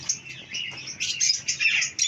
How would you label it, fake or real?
real